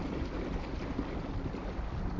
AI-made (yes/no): no